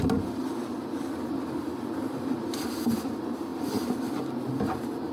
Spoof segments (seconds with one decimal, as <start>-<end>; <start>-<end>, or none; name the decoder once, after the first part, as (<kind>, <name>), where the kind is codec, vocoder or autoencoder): none